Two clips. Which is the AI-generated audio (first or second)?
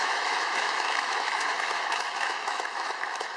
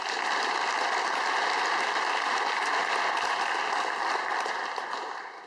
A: first